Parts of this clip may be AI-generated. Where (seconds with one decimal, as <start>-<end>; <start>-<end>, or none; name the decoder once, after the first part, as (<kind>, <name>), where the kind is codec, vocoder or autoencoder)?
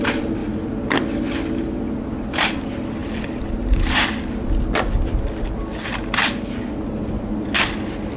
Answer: none